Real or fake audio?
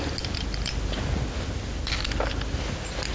real